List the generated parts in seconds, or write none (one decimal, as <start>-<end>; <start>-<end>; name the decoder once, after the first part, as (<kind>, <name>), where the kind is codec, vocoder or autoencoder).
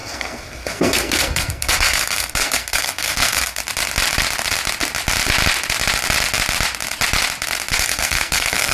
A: 0.0-3.6 (codec, SNAC); 7.7-8.7